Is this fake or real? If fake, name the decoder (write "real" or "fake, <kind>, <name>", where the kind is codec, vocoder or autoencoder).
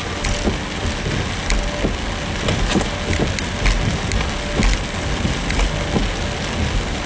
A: real